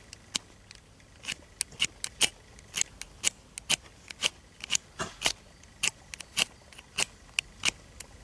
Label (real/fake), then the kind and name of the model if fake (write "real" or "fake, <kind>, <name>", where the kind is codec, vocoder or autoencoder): real